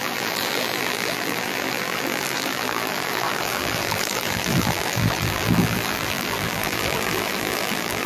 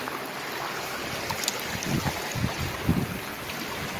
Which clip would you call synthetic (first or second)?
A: first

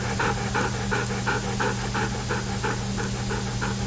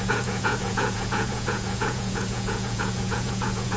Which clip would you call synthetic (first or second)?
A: second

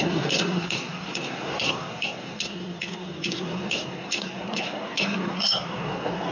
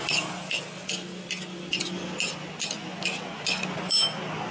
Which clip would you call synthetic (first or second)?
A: first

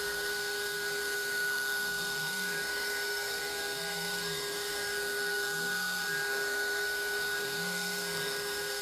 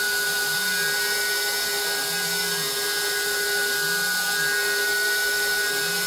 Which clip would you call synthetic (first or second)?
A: first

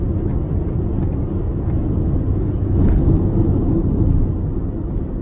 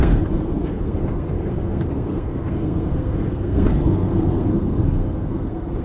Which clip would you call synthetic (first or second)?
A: second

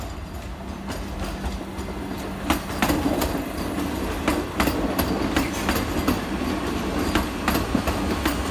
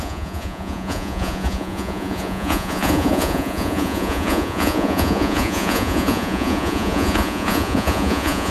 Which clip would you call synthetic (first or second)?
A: second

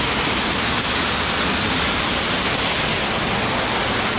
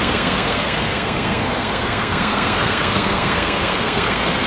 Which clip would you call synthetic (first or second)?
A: second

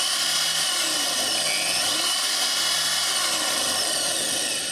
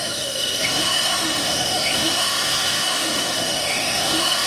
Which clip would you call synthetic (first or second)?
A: second